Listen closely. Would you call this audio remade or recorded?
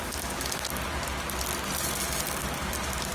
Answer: recorded